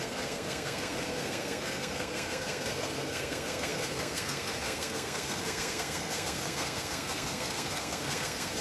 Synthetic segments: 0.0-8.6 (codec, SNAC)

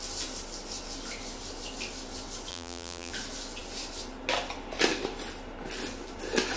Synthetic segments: 2.5-3.1 (vocoder, BigVGAN v2)

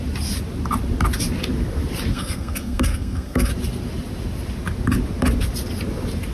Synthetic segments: 2.1-3.5 (codec, SNAC)

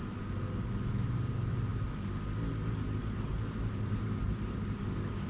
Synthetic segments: 3.0-4.8 (vocoder, BigVGAN v2)

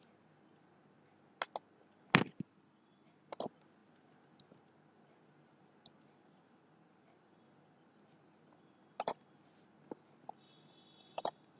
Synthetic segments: none

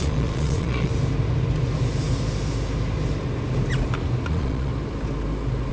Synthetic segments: 0.0-0.9 (vocoder, Vocos); 4.3-4.7